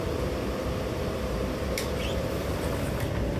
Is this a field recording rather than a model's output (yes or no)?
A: yes